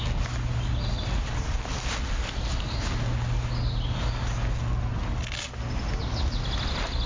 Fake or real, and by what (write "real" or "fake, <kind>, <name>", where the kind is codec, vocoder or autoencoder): real